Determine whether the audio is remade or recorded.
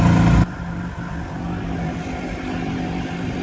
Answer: recorded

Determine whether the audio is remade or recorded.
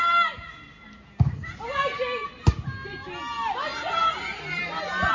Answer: recorded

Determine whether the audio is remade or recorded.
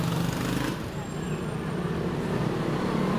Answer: recorded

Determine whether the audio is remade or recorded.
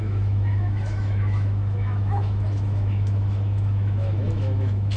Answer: remade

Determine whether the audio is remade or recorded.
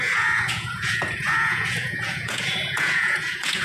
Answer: remade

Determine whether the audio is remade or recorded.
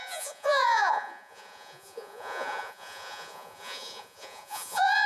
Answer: remade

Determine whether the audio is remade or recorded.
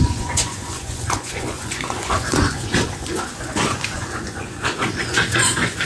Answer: remade